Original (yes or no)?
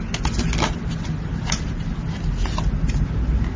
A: yes